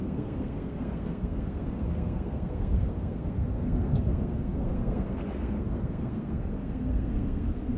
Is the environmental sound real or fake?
fake